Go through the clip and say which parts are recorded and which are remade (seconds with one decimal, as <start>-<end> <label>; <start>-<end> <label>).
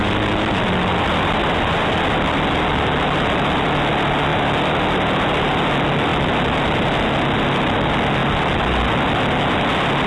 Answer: 0.0-1.9 remade; 1.9-6.1 recorded; 6.1-6.9 remade; 6.9-8.2 recorded; 8.2-8.8 remade; 8.8-10.1 recorded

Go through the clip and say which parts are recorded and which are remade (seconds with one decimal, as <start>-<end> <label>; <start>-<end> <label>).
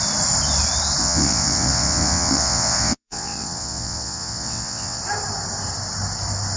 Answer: 0.0-1.0 recorded; 1.0-5.0 remade; 5.0-6.6 recorded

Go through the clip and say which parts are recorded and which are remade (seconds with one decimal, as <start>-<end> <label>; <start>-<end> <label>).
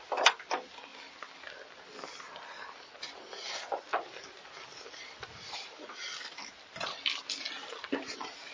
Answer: 0.0-8.5 recorded